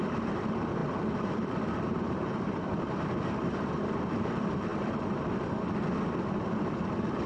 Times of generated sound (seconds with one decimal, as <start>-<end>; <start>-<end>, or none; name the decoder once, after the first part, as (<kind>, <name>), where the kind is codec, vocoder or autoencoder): 0.0-4.7 (vocoder, BigVGAN v2); 6.5-7.3